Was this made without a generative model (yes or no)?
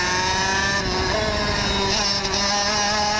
yes